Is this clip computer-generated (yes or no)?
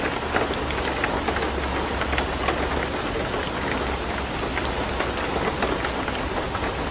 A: no